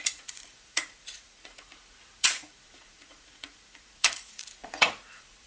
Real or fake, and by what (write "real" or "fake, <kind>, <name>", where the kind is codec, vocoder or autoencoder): fake, vocoder, Vocos